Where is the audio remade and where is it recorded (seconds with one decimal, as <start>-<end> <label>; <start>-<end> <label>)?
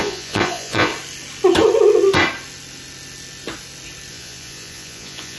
0.0-0.9 remade; 0.9-4.1 recorded; 4.1-5.4 remade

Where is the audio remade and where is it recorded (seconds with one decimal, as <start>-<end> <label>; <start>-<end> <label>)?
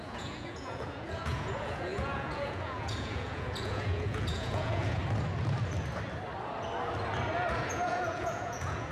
0.0-5.0 remade; 5.0-7.6 recorded; 7.6-8.9 remade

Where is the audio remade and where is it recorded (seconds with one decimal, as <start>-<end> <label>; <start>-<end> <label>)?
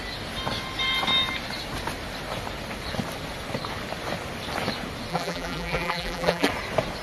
0.0-5.1 recorded; 5.1-6.5 remade; 6.5-7.0 recorded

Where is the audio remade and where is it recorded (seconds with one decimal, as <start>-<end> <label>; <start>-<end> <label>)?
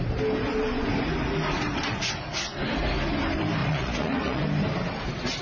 0.0-3.6 recorded; 3.6-4.4 remade; 4.4-5.4 recorded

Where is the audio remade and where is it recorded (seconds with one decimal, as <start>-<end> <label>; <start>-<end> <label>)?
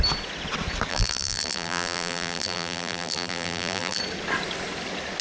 0.0-0.9 recorded; 0.9-4.0 remade; 4.0-5.2 recorded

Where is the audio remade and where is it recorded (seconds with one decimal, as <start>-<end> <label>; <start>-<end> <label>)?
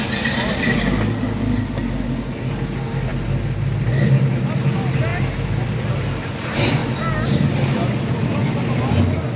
0.0-9.4 recorded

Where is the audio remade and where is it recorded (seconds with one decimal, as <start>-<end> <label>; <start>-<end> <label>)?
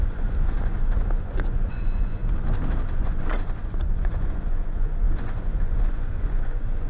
0.0-2.2 remade; 2.2-2.8 recorded; 2.8-6.9 remade